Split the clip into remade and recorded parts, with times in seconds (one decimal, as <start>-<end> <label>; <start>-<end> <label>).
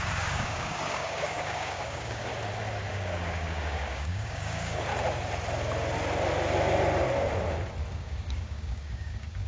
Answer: 0.0-2.3 remade; 2.3-2.9 recorded; 2.9-4.9 remade; 4.9-7.9 recorded; 7.9-9.5 remade